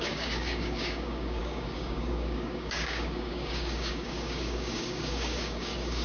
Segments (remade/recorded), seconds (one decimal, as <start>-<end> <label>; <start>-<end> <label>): 0.0-6.0 remade